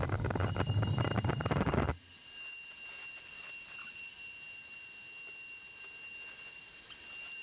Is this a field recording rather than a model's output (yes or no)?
yes